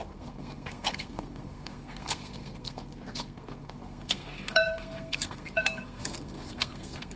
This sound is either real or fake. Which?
fake